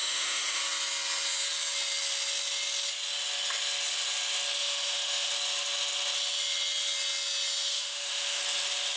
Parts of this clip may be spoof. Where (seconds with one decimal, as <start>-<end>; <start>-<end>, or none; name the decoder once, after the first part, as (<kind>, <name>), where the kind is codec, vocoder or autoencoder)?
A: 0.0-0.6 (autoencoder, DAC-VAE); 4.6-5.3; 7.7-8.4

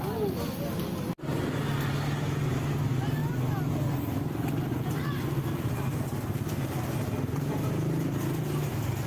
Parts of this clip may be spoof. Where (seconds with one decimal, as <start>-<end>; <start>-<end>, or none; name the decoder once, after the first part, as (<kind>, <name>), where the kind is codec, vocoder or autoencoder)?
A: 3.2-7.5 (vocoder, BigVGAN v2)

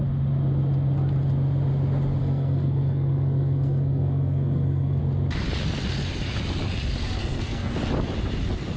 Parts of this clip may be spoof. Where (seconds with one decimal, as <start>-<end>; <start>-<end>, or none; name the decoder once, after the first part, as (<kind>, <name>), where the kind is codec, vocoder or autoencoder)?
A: 2.2-5.0 (codec, SNAC); 7.2-7.8

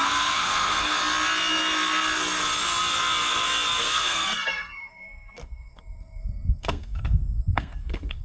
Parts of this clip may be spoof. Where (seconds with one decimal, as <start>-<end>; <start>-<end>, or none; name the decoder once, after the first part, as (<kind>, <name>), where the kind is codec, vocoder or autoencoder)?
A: 0.0-1.0 (codec, SNAC); 3.8-8.2

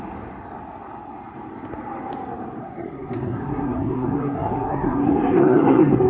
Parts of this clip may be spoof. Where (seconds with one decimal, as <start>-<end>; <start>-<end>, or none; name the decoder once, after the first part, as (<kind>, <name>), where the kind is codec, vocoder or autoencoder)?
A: 2.6-6.1 (codec, SNAC)

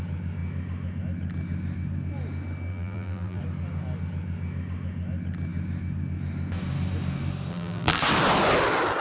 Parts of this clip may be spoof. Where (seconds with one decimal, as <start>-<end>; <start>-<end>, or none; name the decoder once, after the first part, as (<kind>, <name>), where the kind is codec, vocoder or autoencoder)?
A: 2.7-3.4 (vocoder, BigVGAN v2); 7.5-8.0